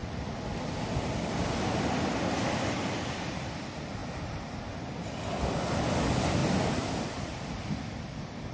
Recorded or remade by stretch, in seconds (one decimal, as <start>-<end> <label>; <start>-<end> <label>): 0.0-4.0 remade; 4.0-5.6 recorded; 5.6-8.5 remade